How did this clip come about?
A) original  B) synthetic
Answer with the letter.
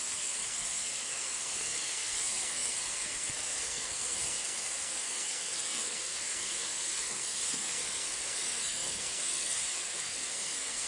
B